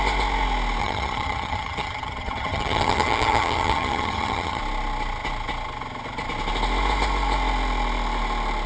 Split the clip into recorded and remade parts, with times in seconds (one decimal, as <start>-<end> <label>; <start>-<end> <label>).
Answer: 0.0-0.8 recorded; 0.8-4.6 remade; 4.6-8.7 recorded